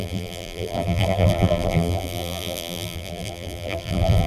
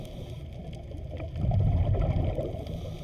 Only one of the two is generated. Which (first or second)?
first